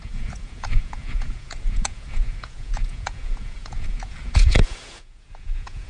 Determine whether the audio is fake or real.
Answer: fake